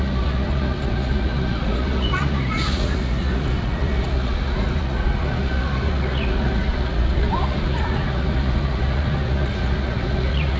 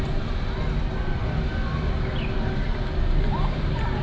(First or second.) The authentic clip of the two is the second